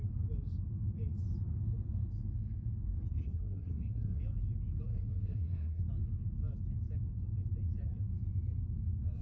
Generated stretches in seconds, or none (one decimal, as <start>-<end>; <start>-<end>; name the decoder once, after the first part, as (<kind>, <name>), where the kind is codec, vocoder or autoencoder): 3.2-4.2 (codec, SNAC); 4.9-5.8